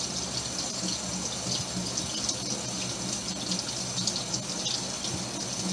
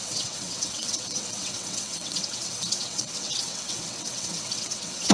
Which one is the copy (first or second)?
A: second